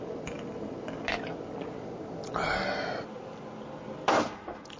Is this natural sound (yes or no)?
yes